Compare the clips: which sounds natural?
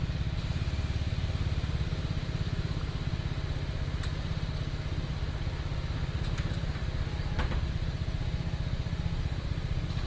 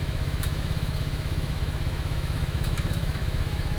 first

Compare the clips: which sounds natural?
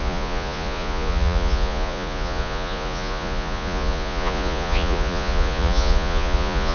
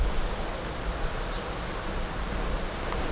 second